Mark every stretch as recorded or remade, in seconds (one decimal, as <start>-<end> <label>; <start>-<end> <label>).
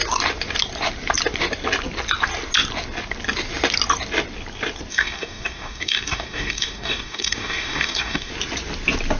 0.0-4.9 recorded; 4.9-8.3 remade; 8.3-9.2 recorded